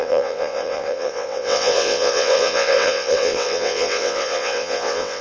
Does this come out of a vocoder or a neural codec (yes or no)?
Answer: yes